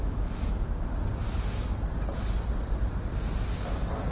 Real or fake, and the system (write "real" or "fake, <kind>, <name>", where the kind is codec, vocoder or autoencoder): real